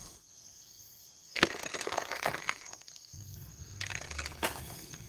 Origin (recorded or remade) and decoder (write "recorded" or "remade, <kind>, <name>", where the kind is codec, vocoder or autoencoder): remade, codec, SNAC